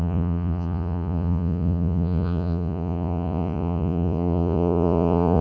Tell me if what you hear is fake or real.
fake